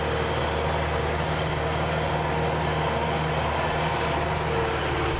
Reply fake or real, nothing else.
real